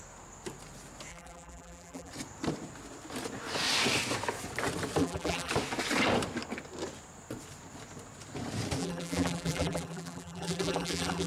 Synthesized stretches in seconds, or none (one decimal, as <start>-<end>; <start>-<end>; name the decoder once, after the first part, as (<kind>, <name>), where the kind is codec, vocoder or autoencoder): 1.1-2.1 (vocoder, BigVGAN v2); 5.0-5.5; 8.8-11.3